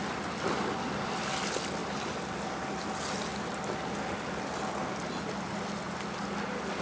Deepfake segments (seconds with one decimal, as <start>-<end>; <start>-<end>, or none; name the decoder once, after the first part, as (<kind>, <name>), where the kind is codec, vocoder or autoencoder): none